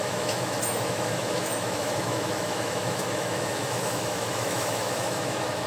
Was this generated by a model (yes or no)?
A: yes